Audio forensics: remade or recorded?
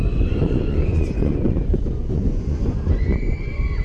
remade